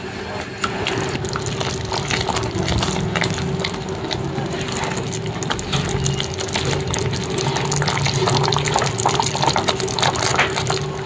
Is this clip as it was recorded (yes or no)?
yes